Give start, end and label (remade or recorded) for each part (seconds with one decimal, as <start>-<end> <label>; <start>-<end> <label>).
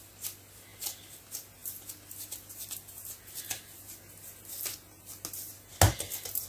0.0-6.5 recorded